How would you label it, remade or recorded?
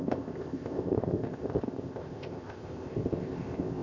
remade